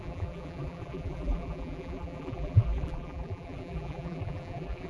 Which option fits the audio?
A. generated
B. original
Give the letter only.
A